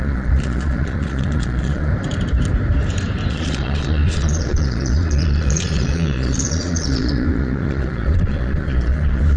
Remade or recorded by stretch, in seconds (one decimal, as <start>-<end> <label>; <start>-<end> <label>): 0.0-1.9 remade; 1.9-3.3 recorded; 3.3-9.4 remade